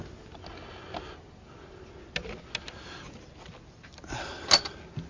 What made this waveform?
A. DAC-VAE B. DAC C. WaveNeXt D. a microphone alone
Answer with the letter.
D